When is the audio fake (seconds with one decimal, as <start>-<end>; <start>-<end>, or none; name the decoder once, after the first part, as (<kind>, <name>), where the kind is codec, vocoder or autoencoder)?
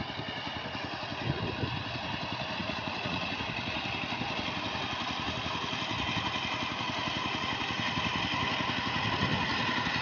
2.6-3.4 (vocoder, Vocos)